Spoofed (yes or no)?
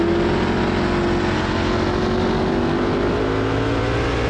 no